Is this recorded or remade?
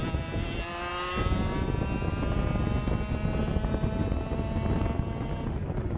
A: recorded